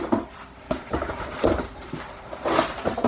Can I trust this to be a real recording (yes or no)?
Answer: no